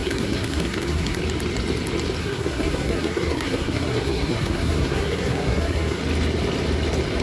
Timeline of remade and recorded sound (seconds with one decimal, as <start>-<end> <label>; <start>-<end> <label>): 0.0-1.2 remade; 1.2-2.2 recorded; 2.2-6.0 remade; 6.0-7.2 recorded